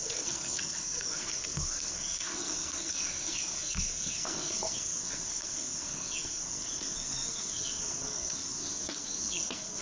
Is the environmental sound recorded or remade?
remade